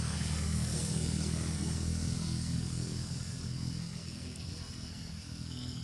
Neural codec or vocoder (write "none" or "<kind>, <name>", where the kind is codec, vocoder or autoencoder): codec, SNAC